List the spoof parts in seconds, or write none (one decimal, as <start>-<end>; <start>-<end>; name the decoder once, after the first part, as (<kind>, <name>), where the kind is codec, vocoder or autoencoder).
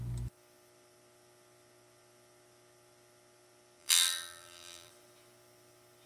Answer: 3.8-4.9 (vocoder, BigVGAN v2)